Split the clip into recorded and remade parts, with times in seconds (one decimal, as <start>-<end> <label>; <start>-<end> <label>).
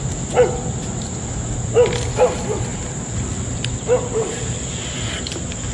0.0-5.7 recorded